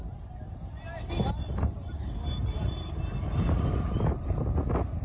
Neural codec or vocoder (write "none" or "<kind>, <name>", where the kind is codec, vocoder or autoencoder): none